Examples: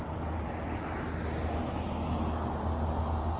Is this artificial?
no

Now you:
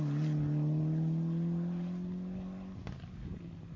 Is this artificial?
no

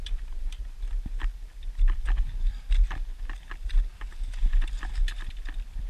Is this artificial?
no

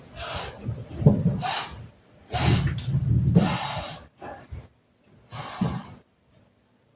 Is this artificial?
no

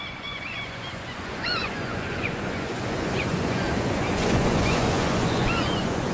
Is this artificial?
yes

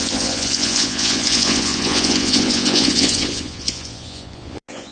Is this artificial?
yes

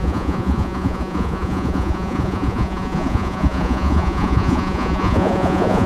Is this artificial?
yes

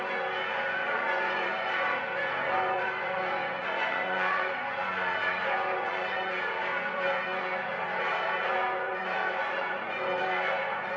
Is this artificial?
yes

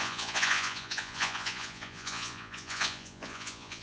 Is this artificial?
yes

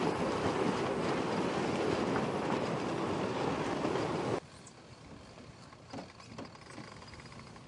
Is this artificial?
no